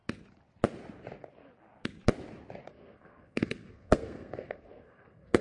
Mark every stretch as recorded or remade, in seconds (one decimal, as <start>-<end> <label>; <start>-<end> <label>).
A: 0.0-2.7 recorded; 2.7-5.4 remade